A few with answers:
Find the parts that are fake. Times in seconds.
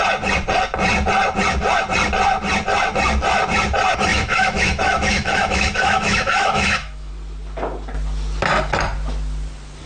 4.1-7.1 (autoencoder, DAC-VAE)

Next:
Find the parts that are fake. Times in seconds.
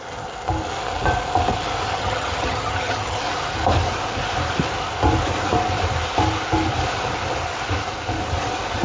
2.0-3.2 (vocoder, HiFi-GAN)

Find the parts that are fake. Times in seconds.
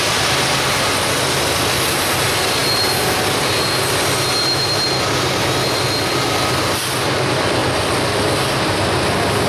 none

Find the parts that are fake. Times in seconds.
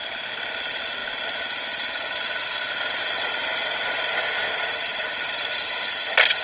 none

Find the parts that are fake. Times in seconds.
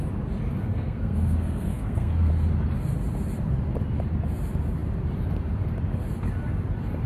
0.6-2.3 (codec, SNAC)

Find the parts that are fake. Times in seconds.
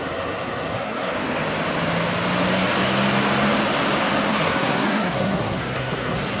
0.0-1.1 (codec, SNAC); 4.3-6.4